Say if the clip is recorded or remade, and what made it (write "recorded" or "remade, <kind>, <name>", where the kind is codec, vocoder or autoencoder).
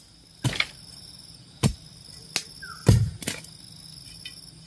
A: recorded